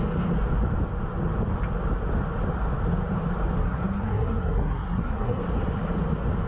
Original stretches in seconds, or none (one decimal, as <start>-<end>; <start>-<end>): 0.0-3.6; 5.4-6.5